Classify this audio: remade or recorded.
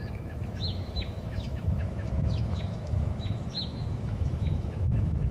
remade